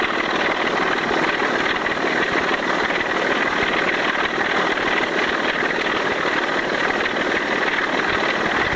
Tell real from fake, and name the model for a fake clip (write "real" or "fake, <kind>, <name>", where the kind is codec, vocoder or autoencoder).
real